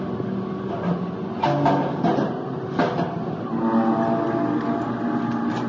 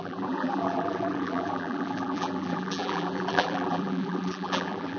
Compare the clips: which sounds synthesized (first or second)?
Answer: second